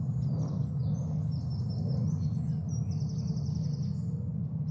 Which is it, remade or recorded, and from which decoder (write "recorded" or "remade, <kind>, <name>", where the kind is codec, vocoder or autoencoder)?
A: recorded